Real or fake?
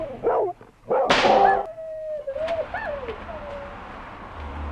real